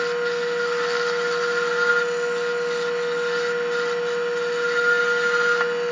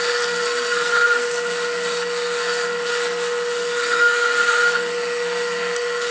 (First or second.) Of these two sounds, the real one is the first